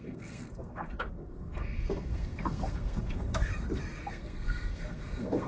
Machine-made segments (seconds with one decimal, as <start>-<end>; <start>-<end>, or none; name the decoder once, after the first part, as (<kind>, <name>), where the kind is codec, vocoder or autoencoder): 0.0-3.5 (codec, SNAC); 4.1-5.5